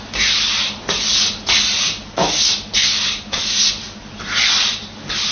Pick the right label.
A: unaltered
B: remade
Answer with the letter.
A